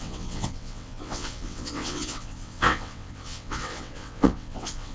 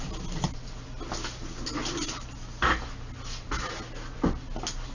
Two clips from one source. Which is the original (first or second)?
second